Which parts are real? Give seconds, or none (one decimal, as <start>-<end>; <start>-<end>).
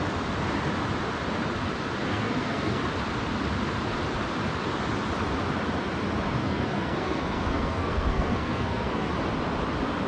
0.0-2.1; 2.8-6.4; 9.1-10.1